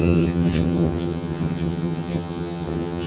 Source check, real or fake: fake